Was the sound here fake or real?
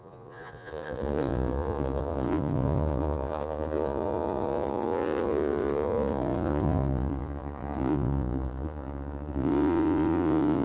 fake